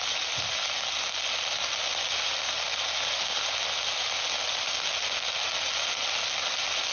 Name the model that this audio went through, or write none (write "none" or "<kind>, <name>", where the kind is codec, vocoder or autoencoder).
none